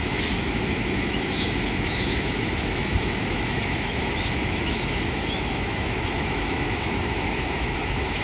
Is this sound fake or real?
fake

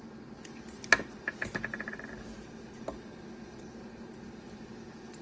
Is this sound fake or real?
real